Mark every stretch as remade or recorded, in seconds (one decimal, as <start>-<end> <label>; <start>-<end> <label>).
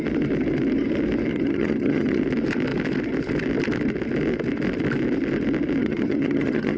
0.0-1.3 recorded; 1.3-2.2 remade; 2.2-5.8 recorded; 5.8-6.8 remade